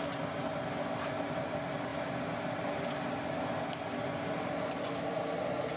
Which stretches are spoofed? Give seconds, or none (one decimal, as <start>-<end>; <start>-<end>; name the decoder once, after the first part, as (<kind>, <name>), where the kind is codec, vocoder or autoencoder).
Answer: none